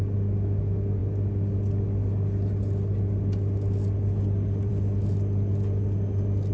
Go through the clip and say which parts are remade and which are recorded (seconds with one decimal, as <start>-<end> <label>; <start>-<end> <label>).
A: 0.0-6.5 recorded